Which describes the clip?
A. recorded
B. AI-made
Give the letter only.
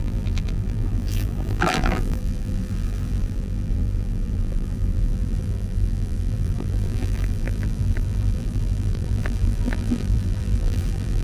B